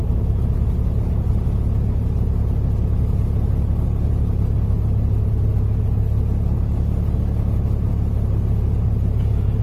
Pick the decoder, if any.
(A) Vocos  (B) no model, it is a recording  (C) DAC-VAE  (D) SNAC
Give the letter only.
B